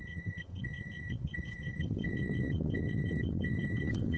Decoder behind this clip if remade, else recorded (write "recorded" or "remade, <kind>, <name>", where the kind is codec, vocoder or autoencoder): remade, vocoder, WaveNeXt